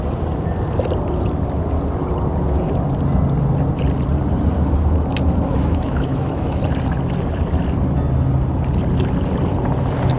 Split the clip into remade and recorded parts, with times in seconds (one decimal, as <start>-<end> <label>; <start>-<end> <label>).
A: 0.0-5.5 recorded; 5.5-6.6 remade; 6.6-10.2 recorded

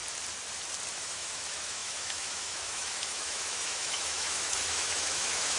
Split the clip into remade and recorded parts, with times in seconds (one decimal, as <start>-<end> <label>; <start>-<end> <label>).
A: 0.0-0.9 recorded; 0.9-5.6 remade

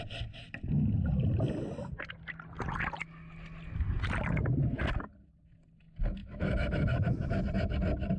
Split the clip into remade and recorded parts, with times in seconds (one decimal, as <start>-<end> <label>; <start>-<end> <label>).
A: 0.0-6.2 recorded; 6.2-7.4 remade; 7.4-8.2 recorded

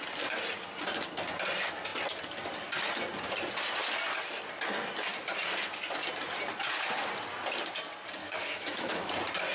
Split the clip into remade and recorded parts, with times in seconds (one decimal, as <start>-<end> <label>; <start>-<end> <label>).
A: 0.0-8.2 recorded; 8.2-9.1 remade; 9.1-9.5 recorded

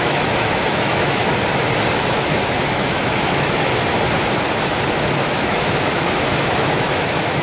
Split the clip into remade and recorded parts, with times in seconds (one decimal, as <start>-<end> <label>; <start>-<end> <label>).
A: 0.0-1.2 remade; 1.2-1.9 recorded; 1.9-3.7 remade; 3.7-4.9 recorded; 4.9-7.4 remade